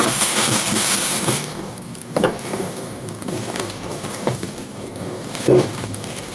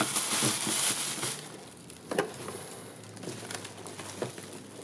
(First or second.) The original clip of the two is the second